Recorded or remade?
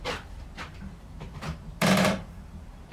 remade